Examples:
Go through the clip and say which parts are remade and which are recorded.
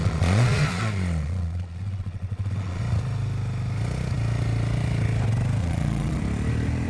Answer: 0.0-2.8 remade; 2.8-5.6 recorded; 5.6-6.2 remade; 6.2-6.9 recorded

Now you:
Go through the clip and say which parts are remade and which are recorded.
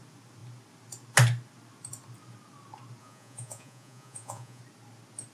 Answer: 0.0-3.0 recorded; 3.0-4.6 remade; 4.6-5.3 recorded